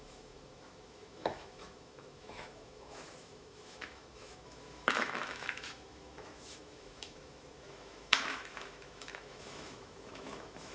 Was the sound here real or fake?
fake